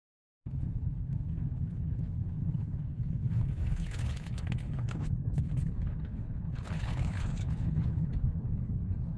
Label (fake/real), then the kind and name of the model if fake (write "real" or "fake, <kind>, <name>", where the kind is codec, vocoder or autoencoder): fake, codec, HILCodec